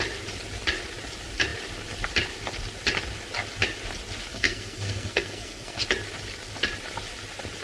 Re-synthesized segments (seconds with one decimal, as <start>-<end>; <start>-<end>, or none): 4.3-5.8